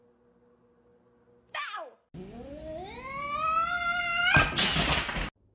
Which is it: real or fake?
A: real